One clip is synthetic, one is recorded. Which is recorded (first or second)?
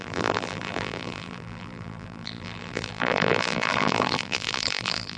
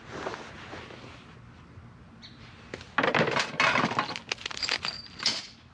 second